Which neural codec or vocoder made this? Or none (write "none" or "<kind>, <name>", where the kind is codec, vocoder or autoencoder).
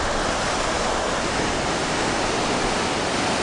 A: none